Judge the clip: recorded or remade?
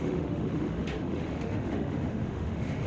remade